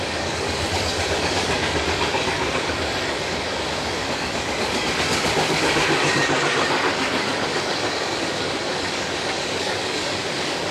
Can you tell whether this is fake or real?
fake